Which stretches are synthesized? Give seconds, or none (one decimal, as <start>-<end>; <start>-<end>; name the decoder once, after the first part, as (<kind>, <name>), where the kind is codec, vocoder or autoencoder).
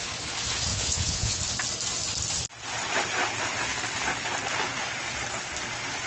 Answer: 0.7-1.4 (vocoder, Vocos)